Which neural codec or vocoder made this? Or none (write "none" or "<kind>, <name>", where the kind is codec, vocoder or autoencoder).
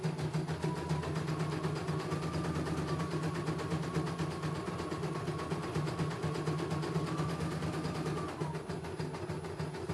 none